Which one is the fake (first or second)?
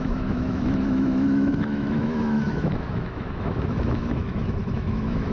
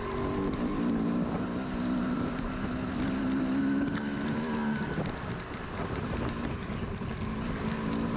first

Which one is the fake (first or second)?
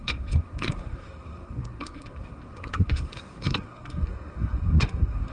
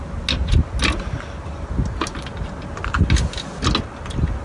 first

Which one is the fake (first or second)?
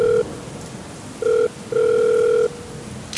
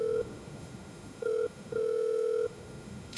second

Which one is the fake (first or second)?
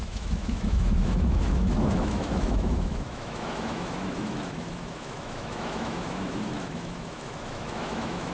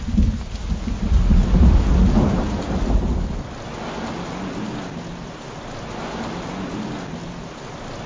first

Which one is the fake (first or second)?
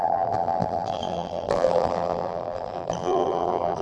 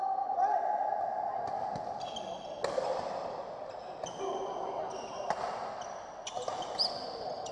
first